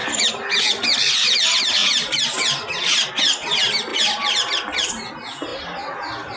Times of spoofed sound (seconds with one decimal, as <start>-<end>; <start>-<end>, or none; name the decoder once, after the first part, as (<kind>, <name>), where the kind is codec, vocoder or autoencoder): 3.9-5.1 (vocoder, BigVGAN v2); 5.5-6.4